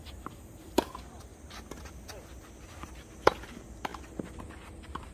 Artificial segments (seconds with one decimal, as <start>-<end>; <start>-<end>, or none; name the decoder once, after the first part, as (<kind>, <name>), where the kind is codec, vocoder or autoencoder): 0.0-1.3 (vocoder, BigVGAN v2); 1.8-2.3; 3.0-5.1